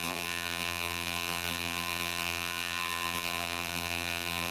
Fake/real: fake